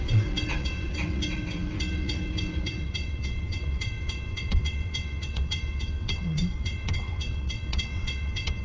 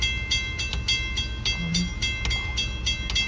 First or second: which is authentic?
second